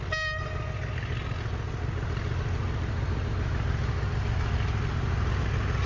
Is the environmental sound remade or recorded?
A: recorded